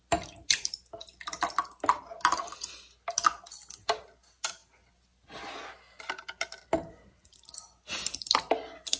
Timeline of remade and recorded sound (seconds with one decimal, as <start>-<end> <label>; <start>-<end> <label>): 0.0-9.0 recorded